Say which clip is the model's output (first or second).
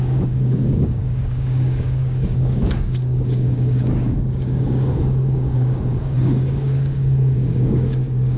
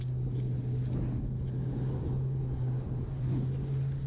first